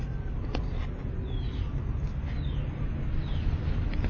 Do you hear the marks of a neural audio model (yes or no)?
no